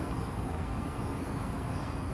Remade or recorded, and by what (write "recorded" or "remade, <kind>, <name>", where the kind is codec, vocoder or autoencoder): remade, codec, SNAC